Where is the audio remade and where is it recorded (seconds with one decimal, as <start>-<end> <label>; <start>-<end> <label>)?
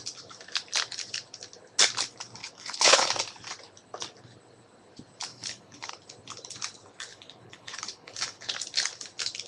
0.0-2.4 recorded; 2.4-3.1 remade; 3.1-5.3 recorded; 5.3-5.9 remade; 5.9-7.1 recorded; 7.1-8.5 remade; 8.5-9.5 recorded